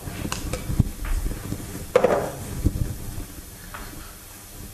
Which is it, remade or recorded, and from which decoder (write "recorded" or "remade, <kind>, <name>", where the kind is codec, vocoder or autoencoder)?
recorded